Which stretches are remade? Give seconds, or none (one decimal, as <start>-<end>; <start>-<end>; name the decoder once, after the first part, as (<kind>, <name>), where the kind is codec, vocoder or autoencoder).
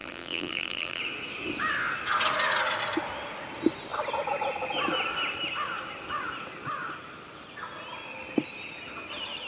0.0-1.0 (vocoder, BigVGAN v2)